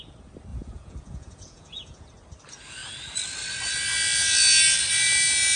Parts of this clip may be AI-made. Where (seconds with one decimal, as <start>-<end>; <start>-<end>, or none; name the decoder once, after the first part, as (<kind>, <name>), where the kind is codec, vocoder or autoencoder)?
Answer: 0.5-2.1 (vocoder, Vocos)